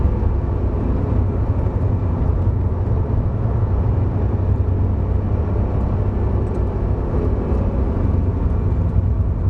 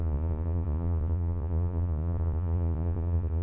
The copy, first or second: second